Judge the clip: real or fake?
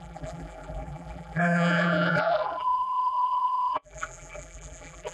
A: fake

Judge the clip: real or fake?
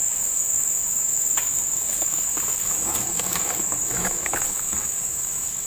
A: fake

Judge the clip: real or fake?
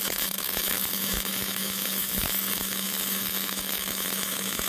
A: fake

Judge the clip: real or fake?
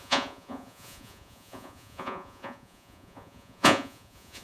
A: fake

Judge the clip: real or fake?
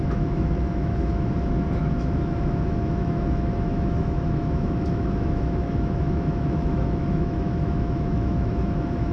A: fake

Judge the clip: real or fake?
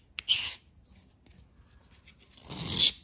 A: real